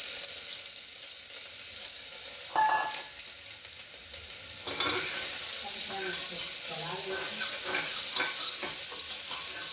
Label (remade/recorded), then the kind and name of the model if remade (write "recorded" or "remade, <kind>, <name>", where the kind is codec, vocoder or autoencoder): recorded